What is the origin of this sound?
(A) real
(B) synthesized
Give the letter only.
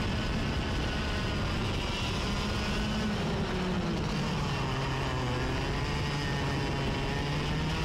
A